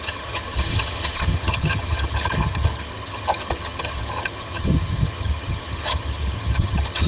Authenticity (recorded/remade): remade